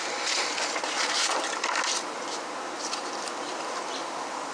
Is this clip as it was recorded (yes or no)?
yes